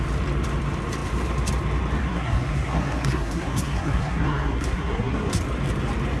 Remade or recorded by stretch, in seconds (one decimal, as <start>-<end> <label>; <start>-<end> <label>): 0.0-2.0 recorded; 2.0-5.4 remade; 5.4-6.2 recorded